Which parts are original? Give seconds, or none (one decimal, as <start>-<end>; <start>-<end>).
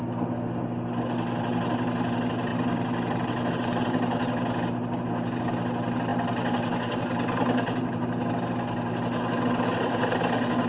0.0-10.7